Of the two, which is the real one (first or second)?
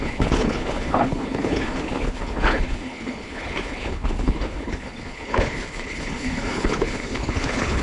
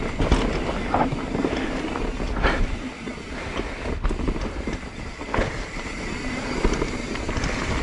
second